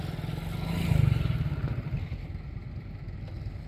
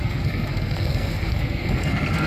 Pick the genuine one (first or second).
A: first